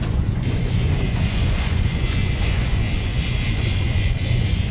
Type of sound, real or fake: fake